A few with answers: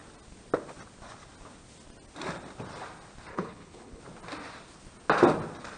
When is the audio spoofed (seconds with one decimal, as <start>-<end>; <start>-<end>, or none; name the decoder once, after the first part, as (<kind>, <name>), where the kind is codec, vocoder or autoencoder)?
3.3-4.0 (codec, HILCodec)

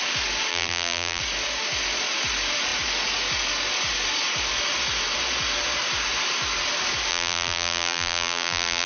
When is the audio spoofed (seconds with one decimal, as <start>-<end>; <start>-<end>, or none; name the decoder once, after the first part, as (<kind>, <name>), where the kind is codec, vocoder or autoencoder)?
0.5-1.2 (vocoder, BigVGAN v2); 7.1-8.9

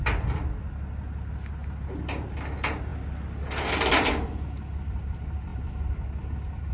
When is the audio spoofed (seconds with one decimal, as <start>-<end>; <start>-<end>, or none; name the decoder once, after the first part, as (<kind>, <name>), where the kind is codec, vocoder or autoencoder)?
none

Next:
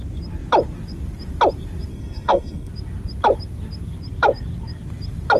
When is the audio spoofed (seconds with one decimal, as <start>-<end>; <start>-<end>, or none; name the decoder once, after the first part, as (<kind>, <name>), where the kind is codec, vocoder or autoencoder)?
1.9-2.7 (codec, SNAC)